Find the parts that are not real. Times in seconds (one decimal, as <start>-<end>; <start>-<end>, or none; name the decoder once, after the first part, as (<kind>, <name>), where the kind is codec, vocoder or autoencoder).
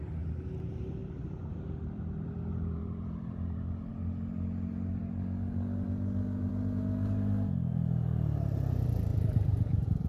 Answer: 1.0-3.9 (vocoder, BigVGAN v2); 9.1-10.1